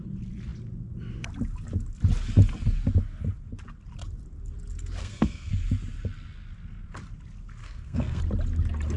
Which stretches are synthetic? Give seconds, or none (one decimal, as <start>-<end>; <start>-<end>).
5.0-5.5; 7.6-8.2